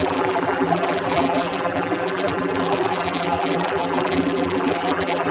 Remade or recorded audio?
remade